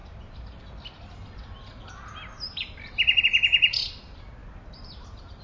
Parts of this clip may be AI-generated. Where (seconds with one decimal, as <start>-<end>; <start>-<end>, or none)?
0.0-3.2